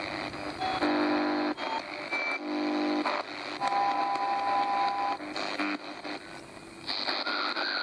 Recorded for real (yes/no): yes